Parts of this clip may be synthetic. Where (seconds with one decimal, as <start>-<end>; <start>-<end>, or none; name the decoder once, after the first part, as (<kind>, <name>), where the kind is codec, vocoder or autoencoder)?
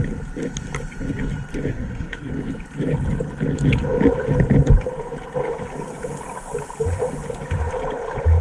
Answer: 1.7-2.3 (codec, SNAC)